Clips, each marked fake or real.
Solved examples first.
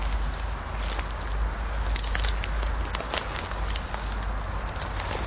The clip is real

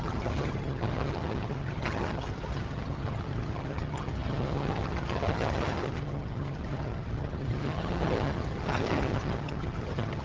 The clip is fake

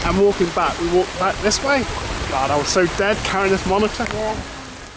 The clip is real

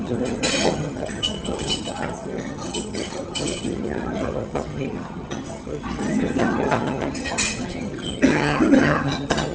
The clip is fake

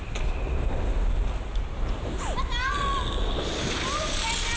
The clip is real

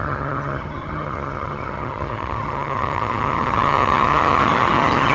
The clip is fake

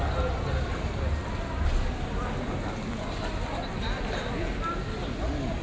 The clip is real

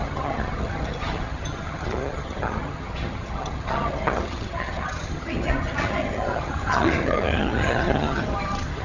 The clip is fake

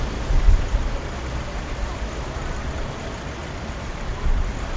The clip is real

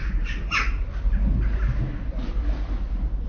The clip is real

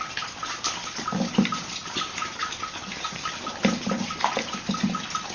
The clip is real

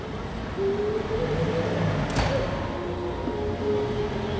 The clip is real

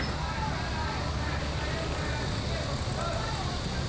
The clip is real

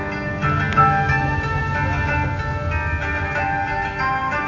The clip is real